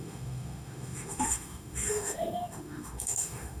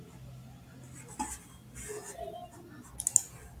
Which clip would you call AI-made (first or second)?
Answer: first